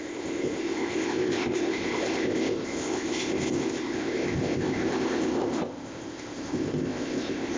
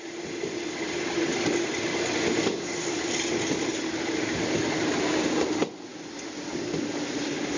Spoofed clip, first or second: first